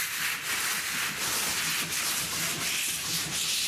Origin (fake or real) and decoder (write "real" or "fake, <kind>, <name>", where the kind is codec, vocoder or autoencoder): real